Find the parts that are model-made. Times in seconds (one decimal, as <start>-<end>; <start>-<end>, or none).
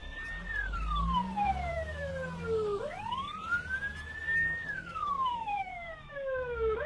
1.7-2.1; 4.7-6.9